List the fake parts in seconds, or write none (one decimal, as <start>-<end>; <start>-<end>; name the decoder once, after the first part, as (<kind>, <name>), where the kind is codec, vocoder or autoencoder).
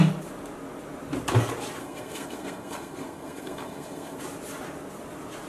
1.8-4.2 (codec, SNAC)